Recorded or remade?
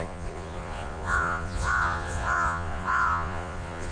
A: remade